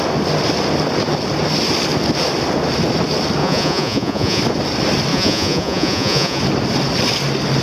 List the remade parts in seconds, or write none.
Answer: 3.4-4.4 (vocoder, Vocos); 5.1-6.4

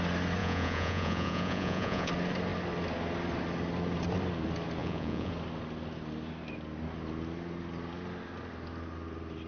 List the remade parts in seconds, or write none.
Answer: 0.4-2.1 (vocoder, Vocos); 4.8-5.3

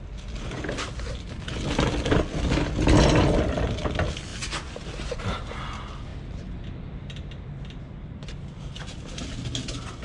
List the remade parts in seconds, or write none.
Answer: none

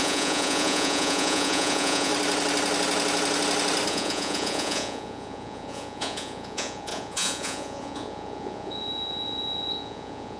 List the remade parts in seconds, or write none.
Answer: 0.0-2.1 (vocoder, Vocos); 3.9-10.4